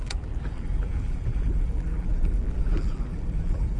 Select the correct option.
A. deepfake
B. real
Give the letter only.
A